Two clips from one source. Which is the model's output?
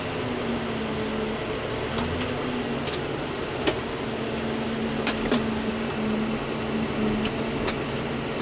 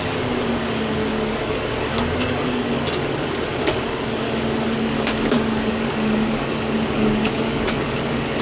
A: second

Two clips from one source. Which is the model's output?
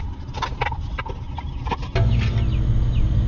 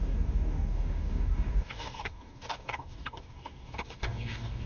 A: second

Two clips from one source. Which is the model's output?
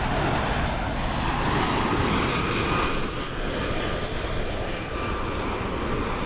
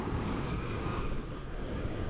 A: second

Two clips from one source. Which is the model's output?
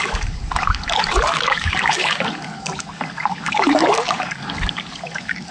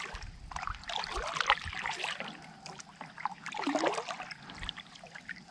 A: first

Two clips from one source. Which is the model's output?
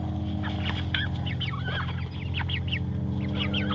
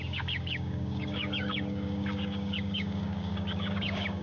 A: second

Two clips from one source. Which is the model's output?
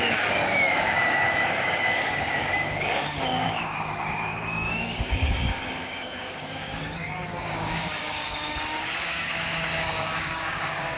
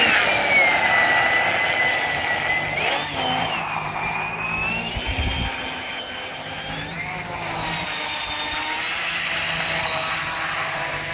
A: first